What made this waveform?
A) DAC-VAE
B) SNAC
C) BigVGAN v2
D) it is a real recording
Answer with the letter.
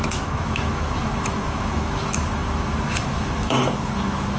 A